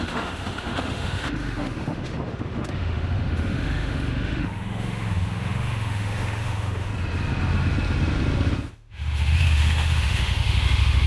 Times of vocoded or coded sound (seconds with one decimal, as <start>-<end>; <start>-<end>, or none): 0.0-6.9; 8.7-11.1